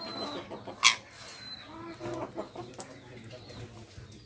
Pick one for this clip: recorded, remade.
recorded